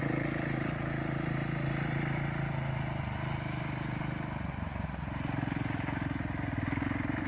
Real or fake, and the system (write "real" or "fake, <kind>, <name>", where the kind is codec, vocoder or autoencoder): real